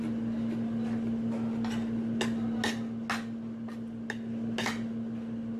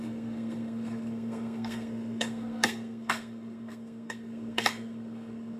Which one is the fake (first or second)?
second